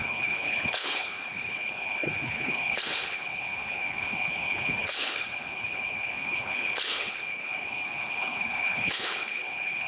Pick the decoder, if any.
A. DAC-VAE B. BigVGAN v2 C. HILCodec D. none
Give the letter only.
C